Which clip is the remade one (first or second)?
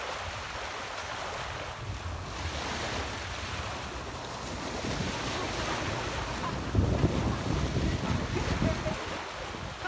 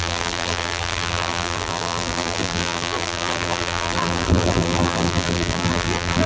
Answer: second